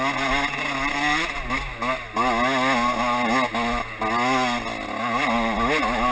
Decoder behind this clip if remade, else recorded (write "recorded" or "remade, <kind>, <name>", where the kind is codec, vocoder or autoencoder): recorded